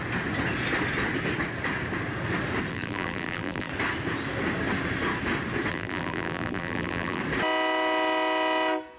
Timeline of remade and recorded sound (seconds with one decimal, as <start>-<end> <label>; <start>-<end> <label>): 0.0-2.7 recorded; 2.7-3.7 remade; 3.7-5.7 recorded; 5.7-7.2 remade; 7.2-9.0 recorded